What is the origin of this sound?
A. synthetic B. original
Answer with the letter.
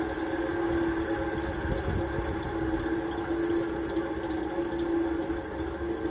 B